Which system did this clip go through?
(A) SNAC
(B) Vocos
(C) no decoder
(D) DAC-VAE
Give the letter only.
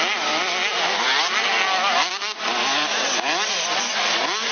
C